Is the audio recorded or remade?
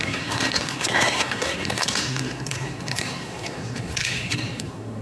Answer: remade